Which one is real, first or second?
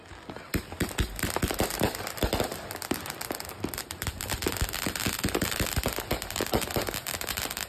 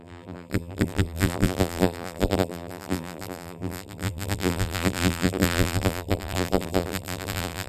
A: first